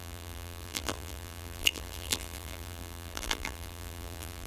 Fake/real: fake